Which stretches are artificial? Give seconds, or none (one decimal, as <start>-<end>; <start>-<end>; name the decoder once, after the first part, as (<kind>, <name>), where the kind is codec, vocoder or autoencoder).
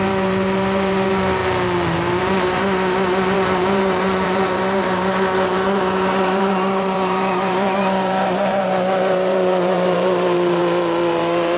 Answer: 0.0-1.4 (vocoder, BigVGAN v2); 2.2-10.6; 11.1-11.6